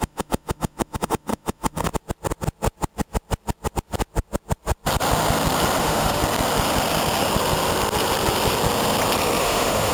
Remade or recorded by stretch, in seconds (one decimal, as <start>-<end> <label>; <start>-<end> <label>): 0.0-1.9 remade; 1.9-5.8 recorded; 5.8-6.2 remade; 6.2-9.4 recorded; 9.4-9.9 remade